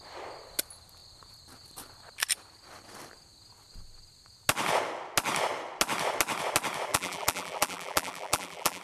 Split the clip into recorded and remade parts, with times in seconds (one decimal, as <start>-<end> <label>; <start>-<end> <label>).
0.0-6.9 recorded; 6.9-8.8 remade